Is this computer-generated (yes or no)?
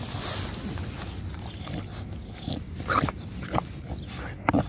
no